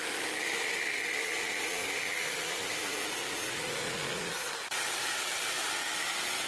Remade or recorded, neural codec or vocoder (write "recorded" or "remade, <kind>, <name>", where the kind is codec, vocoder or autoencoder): recorded